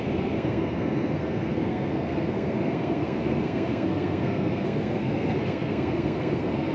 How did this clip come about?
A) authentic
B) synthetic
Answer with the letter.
B